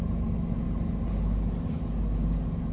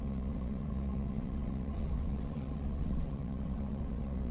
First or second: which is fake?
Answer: second